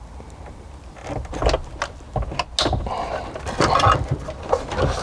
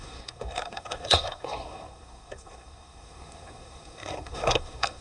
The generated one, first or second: second